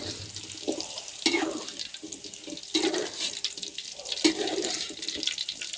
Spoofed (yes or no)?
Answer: no